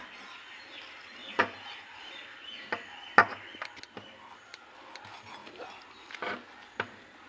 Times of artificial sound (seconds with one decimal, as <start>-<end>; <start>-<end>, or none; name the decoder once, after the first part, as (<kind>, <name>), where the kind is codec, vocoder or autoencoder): 1.2-2.2 (vocoder, BigVGAN v2); 5.4-7.3